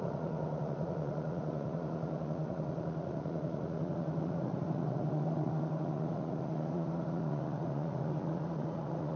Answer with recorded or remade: remade